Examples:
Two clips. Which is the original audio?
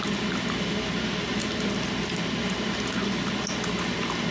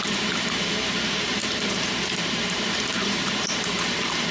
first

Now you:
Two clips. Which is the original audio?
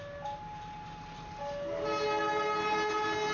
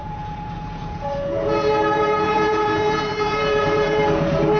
first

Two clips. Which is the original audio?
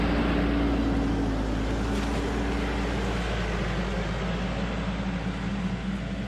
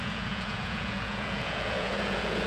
first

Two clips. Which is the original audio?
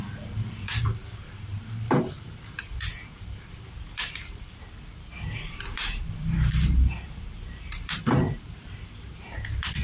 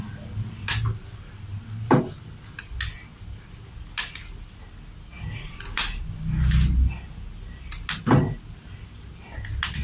second